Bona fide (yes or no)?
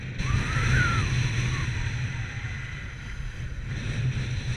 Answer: yes